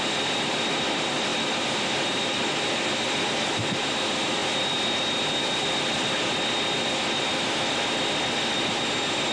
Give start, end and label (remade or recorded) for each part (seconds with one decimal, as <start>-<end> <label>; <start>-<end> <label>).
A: 0.0-9.3 recorded